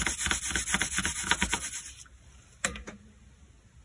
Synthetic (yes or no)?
no